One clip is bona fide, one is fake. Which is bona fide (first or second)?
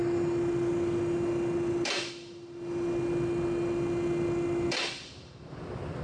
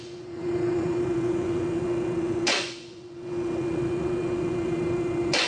first